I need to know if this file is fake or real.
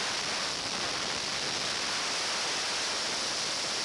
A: real